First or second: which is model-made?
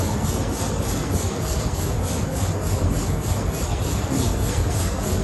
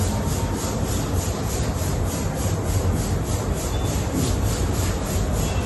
first